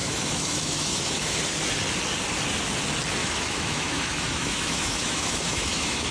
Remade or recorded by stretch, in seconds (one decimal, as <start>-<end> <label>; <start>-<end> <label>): 0.0-1.4 remade; 1.4-3.2 recorded; 3.2-6.1 remade